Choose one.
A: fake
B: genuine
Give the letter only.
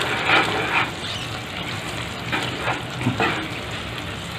B